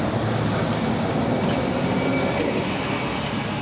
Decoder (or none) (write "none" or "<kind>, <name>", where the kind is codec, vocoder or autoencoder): none